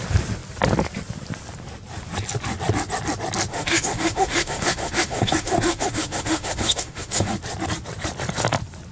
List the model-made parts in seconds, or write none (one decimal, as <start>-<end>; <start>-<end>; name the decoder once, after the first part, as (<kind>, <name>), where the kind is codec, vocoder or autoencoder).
3.5-7.3 (autoencoder, DAC-VAE)